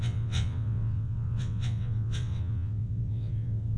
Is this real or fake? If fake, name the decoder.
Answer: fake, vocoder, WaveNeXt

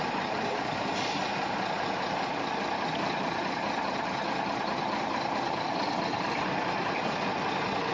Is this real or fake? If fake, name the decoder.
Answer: real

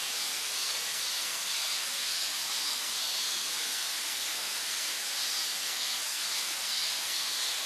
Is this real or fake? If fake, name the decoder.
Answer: fake, codec, SNAC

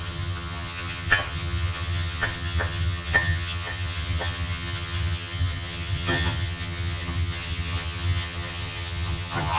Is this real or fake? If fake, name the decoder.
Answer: fake, vocoder, HiFi-GAN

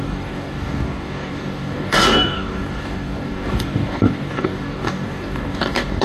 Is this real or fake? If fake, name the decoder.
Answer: fake, codec, DAC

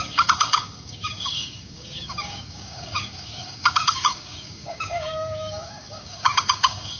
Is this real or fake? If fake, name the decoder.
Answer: fake, codec, DAC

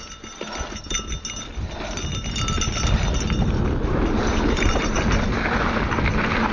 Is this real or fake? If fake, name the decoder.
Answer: real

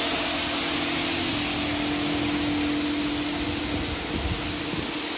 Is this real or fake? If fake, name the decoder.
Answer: real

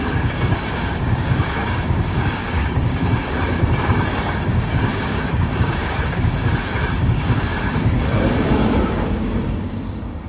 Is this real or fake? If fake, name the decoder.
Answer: fake, codec, DAC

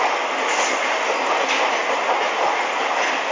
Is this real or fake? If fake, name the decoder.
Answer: real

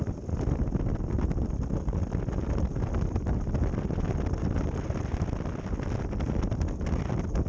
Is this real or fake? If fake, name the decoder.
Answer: real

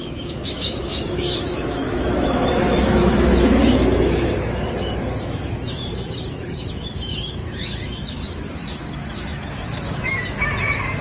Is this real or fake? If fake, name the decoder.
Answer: fake, autoencoder, DAC-VAE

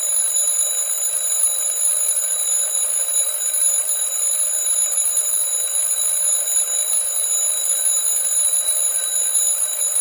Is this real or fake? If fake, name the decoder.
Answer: real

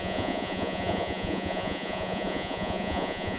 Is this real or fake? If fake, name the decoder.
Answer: fake, vocoder, Vocos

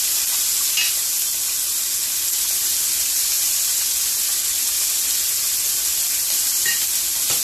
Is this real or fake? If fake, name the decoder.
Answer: real